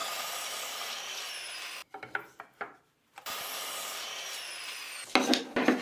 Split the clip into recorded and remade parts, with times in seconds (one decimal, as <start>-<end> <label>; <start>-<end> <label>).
0.0-1.1 remade; 1.1-1.8 recorded; 1.8-4.2 remade; 4.2-5.8 recorded